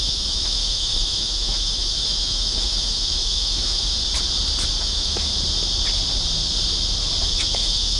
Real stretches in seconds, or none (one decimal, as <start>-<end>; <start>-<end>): 4.0-4.8; 5.3-7.2